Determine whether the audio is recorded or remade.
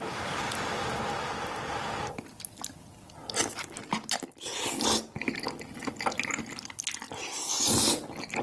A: recorded